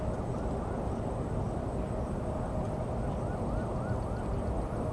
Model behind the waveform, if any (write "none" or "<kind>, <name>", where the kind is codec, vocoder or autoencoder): none